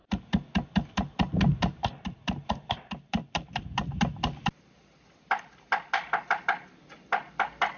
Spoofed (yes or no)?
no